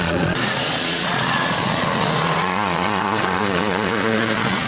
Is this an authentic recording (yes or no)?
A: no